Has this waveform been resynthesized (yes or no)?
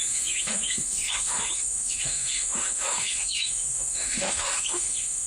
yes